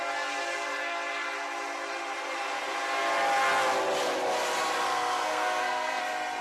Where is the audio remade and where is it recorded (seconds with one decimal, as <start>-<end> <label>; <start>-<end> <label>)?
0.0-4.9 recorded; 4.9-6.0 remade; 6.0-6.4 recorded